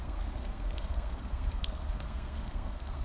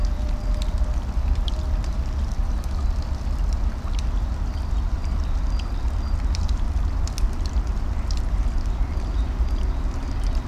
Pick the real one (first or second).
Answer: second